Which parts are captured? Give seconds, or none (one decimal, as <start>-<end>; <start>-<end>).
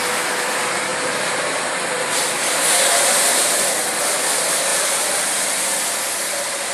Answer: 0.0-0.9; 3.6-4.7; 5.6-6.7